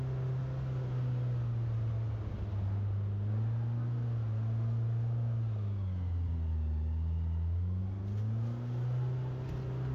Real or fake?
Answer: real